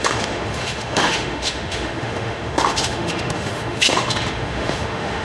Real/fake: fake